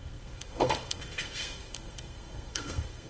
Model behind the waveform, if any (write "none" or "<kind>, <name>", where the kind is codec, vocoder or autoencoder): codec, SNAC